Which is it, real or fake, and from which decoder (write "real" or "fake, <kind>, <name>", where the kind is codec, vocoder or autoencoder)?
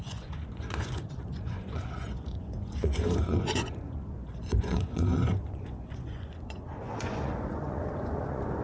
fake, vocoder, Vocos